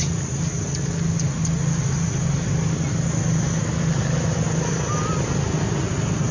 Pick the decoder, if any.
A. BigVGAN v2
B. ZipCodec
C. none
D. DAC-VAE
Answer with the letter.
C